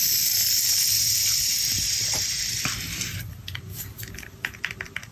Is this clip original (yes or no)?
yes